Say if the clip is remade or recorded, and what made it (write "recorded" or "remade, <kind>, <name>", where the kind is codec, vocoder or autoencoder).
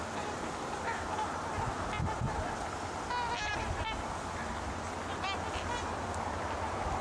recorded